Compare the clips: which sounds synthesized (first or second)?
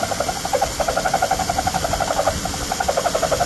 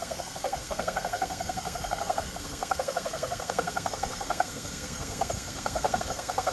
second